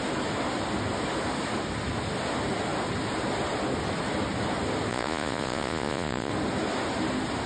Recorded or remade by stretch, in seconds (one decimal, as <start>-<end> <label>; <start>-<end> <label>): 0.0-4.9 recorded; 4.9-6.3 remade; 6.3-7.5 recorded